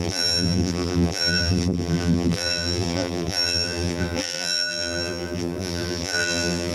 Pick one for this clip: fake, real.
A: fake